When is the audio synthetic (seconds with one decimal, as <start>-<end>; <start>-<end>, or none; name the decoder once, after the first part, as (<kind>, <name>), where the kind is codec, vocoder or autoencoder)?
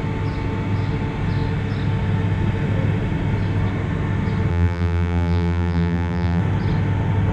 4.5-6.4 (vocoder, BigVGAN v2)